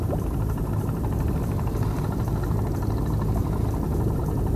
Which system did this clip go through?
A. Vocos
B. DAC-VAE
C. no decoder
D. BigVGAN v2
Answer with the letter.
C